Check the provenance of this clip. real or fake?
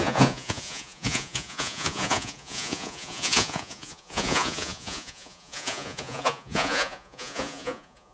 fake